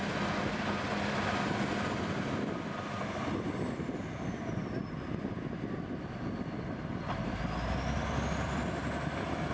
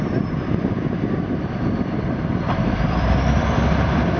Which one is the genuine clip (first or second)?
first